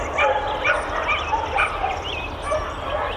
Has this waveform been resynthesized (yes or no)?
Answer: no